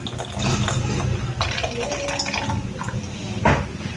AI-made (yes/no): no